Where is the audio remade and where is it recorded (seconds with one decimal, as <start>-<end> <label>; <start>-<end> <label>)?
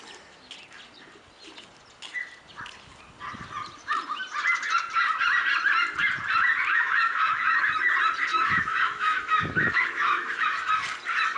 0.0-6.7 recorded; 6.7-7.6 remade; 7.6-8.3 recorded; 8.3-10.7 remade; 10.7-11.4 recorded